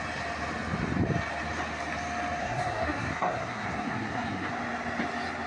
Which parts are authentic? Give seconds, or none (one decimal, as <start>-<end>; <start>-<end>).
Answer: 0.0-2.4; 4.5-5.5